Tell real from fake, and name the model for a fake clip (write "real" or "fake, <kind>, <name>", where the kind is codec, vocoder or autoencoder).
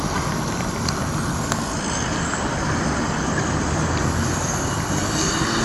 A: real